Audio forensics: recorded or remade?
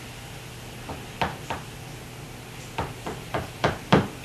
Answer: remade